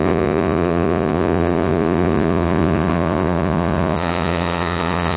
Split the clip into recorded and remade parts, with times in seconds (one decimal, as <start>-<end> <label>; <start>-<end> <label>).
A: 0.0-5.2 remade